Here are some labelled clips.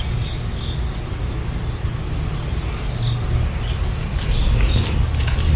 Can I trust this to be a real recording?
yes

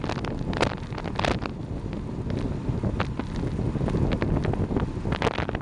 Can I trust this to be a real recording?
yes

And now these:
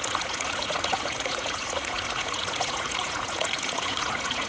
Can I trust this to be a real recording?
no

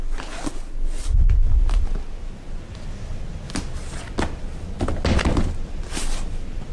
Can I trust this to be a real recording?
yes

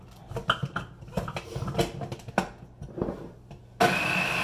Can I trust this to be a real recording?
yes